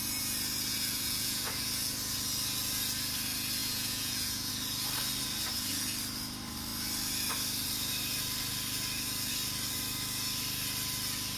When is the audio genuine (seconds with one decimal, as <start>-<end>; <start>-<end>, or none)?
0.0-0.7; 1.5-3.6; 4.5-11.4